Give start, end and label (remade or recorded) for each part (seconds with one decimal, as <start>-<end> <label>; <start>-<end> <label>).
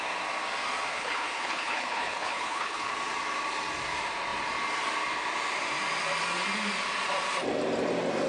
0.0-0.9 recorded; 0.9-2.9 remade; 2.9-8.3 recorded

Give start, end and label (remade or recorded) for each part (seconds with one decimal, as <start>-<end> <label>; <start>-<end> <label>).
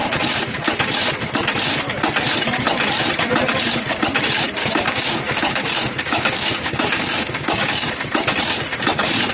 0.0-4.6 recorded; 4.6-7.9 remade; 7.9-9.3 recorded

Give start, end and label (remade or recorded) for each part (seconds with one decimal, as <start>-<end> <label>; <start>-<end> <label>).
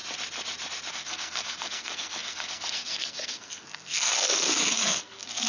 0.0-0.9 recorded; 0.9-5.5 remade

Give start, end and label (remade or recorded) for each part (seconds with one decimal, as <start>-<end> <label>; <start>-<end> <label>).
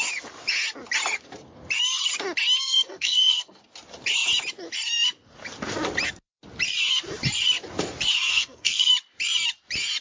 0.0-2.6 recorded; 2.6-3.6 remade; 3.6-8.3 recorded; 8.3-8.9 remade; 8.9-10.0 recorded